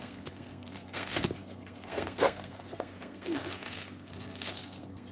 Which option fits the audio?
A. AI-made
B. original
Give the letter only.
A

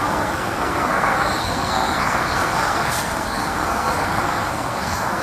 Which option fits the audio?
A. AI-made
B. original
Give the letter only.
A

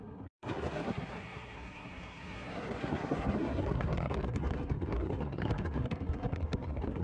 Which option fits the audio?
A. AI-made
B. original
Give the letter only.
A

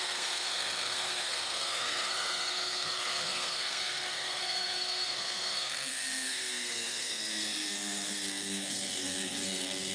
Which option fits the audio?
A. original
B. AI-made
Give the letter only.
B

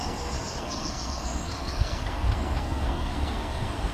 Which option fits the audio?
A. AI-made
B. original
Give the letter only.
A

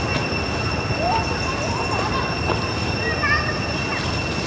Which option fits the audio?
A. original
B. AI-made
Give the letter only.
A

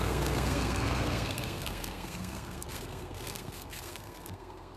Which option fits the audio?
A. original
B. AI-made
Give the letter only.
B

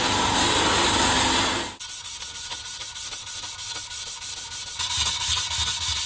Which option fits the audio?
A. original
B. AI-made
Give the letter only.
A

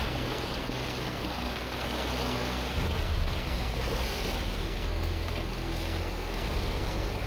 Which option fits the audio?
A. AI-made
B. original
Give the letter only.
A